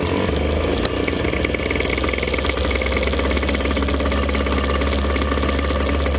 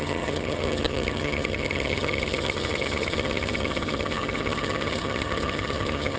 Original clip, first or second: first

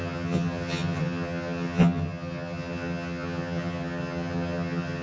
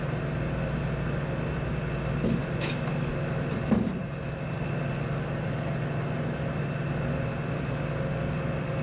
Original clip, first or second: second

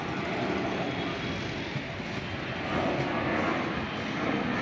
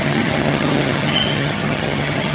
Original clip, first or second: first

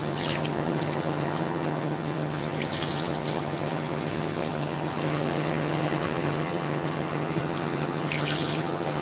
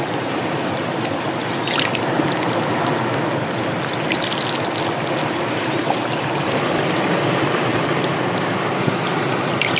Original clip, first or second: second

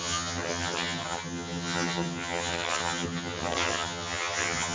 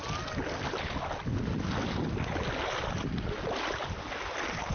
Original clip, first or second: second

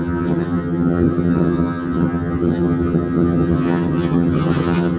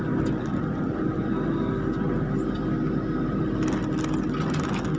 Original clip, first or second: second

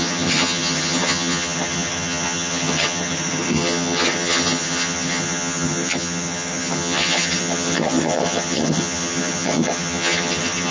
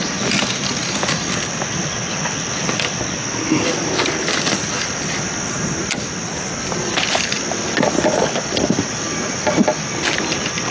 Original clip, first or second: second